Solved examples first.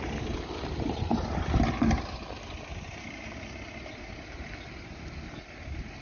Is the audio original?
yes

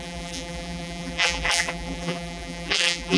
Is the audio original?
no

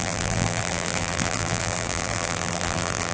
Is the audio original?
no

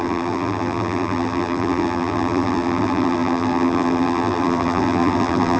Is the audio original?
no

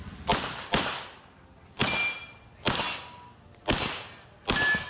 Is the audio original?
yes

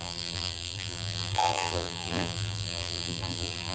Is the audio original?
no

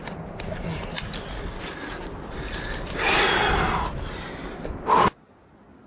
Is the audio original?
yes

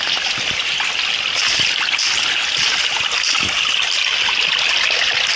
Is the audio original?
yes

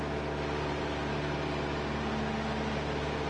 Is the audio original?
yes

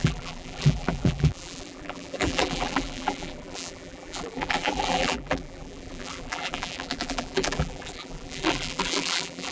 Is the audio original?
no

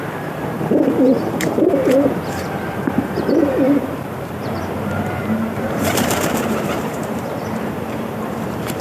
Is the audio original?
no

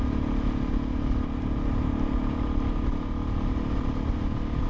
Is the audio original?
yes